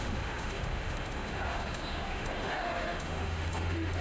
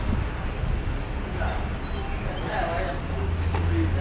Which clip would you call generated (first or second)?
first